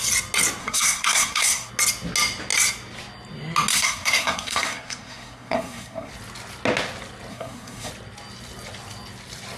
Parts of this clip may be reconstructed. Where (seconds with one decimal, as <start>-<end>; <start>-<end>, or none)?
0.6-1.7; 3.7-6.1; 7.3-7.9